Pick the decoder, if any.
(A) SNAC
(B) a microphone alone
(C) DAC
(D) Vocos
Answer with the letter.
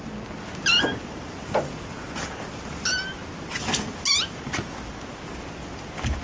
B